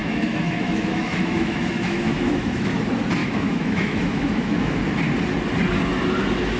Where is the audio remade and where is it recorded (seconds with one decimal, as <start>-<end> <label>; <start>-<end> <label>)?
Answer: 0.0-2.7 remade; 2.7-3.2 recorded; 3.2-4.8 remade; 4.8-6.6 recorded